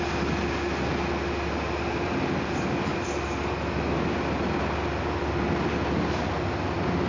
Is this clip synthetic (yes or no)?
no